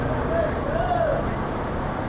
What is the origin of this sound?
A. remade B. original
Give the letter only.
B